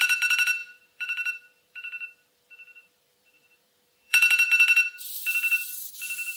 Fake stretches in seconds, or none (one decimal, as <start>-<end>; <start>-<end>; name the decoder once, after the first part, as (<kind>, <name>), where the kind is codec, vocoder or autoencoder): 0.0-6.4 (vocoder, BigVGAN v2)